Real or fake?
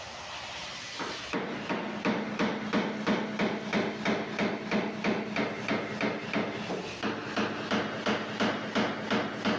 real